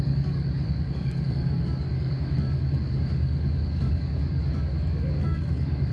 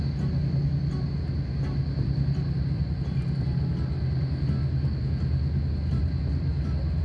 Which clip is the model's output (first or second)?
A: first